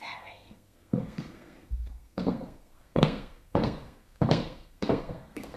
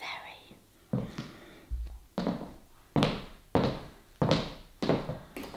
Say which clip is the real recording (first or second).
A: second